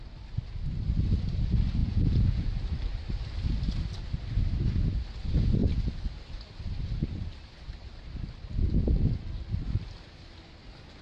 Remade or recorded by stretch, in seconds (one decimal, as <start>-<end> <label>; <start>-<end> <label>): 0.0-1.8 recorded; 1.8-2.5 remade; 2.5-11.0 recorded